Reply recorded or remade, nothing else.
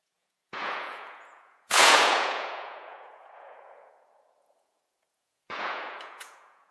remade